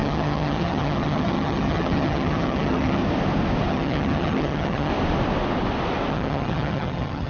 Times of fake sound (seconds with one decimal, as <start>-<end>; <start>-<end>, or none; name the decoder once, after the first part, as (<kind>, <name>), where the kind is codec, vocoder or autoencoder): 0.0-3.0 (vocoder, HiFi-GAN); 3.7-4.9; 6.1-7.3